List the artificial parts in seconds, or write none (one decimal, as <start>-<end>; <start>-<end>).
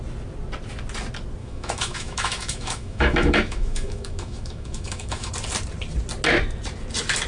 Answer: 1.4-5.3